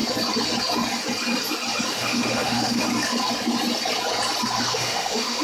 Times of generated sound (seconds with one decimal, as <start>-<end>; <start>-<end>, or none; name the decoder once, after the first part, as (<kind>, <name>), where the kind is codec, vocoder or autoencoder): 1.9-2.8 (autoencoder, DAC-VAE); 4.6-5.4